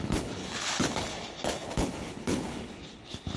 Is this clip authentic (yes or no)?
no